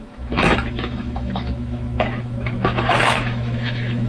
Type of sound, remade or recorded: remade